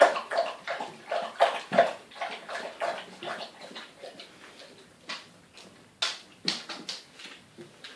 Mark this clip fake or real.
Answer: real